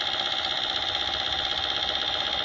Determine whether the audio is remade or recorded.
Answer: recorded